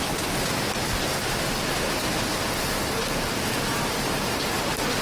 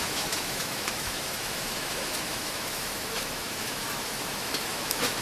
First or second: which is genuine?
first